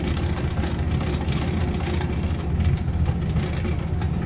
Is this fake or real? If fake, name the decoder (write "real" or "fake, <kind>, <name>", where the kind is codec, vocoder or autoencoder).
real